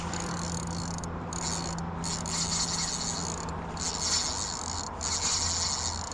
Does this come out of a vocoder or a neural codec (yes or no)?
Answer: no